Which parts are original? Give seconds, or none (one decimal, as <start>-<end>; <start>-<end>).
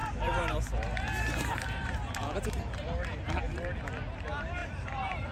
3.2-4.6